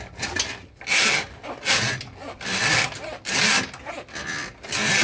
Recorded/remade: recorded